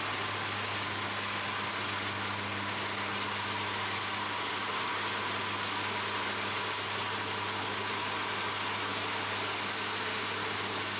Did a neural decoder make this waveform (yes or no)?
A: no